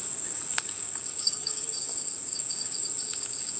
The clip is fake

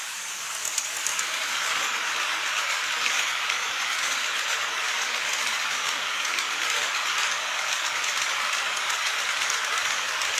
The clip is fake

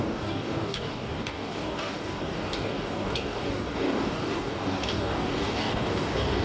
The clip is fake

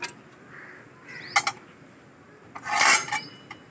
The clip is real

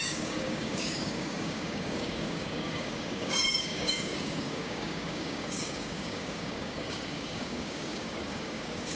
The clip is fake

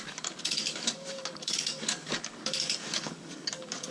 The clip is fake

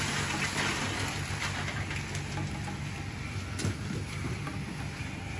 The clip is real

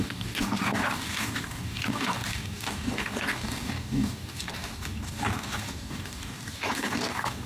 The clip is fake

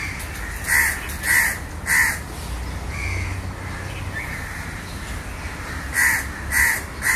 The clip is real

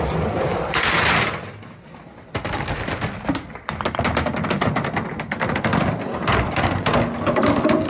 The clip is real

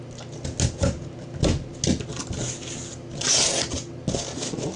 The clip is real